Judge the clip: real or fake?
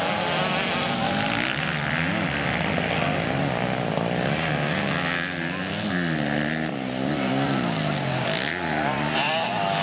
real